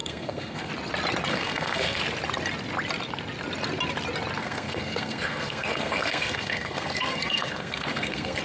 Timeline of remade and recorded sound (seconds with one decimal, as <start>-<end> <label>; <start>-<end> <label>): 0.0-0.7 remade; 0.7-1.3 recorded; 1.3-2.0 remade; 2.0-4.4 recorded; 4.4-8.4 remade